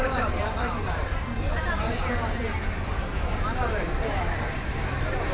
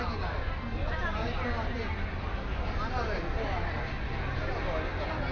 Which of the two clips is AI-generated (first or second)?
first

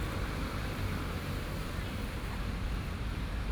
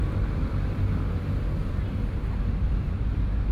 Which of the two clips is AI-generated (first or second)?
first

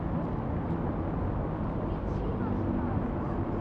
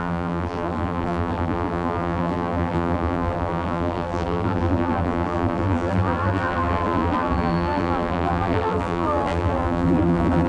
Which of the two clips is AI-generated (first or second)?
second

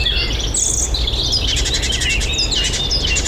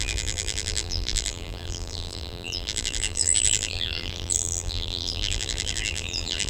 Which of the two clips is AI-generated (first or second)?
second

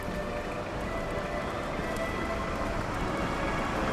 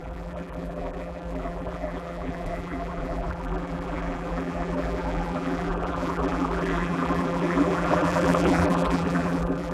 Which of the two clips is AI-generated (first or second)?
second